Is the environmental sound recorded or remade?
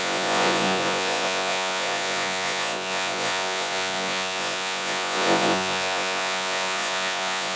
remade